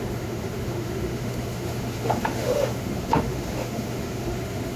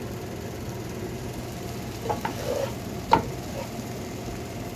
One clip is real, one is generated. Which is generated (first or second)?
first